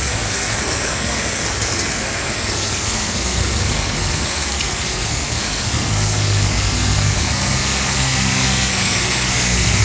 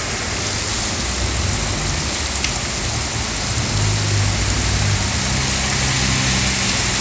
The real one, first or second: second